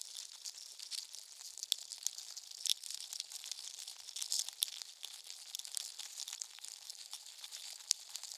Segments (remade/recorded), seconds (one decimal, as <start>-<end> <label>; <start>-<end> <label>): 0.0-8.4 recorded